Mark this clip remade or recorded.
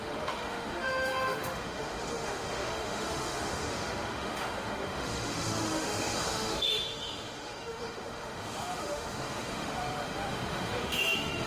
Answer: remade